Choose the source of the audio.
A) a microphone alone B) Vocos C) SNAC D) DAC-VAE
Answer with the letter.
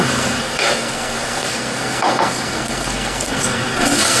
C